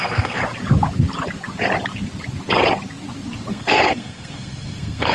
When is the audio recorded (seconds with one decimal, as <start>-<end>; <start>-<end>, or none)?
0.4-3.5